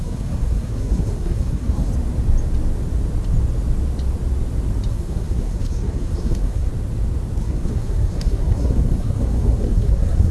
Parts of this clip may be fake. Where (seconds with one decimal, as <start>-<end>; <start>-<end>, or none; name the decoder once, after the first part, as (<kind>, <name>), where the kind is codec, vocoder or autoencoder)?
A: 0.0-1.9 (codec, SNAC); 4.9-6.7; 7.4-10.3